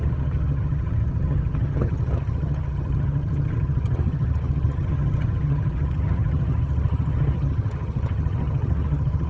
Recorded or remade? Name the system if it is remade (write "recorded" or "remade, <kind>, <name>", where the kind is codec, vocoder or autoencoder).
remade, vocoder, HiFi-GAN